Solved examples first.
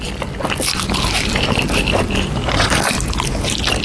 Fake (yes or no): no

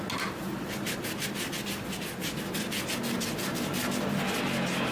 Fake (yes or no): no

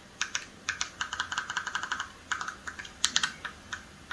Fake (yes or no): no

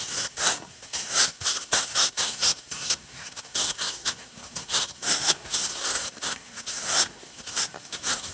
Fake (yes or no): yes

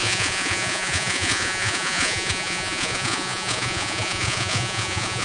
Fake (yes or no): yes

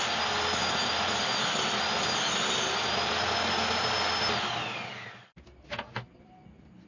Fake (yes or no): no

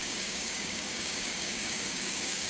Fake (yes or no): yes